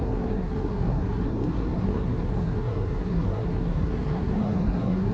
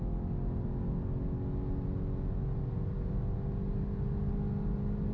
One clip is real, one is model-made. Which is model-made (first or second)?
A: first